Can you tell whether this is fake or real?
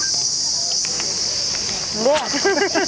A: real